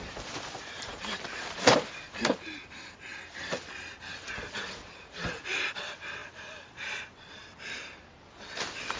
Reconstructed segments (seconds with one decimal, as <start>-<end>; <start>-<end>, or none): none